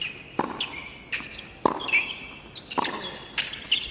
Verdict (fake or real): real